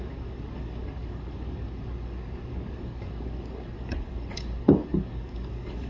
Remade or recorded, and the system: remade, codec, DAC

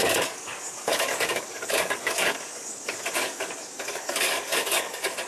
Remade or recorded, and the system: remade, codec, DAC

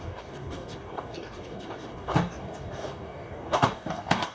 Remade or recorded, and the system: remade, codec, DAC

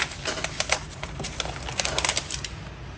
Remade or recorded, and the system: recorded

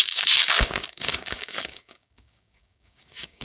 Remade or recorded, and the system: remade, codec, DAC